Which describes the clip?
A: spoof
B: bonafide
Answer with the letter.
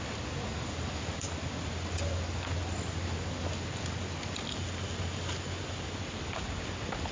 B